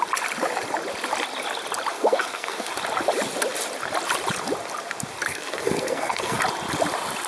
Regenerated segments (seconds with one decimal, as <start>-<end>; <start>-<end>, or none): 1.9-2.7; 5.3-6.4